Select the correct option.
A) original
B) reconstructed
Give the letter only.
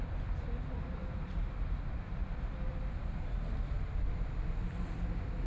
A